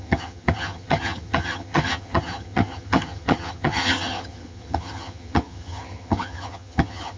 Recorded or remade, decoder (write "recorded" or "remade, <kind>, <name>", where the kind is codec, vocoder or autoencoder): remade, vocoder, HiFi-GAN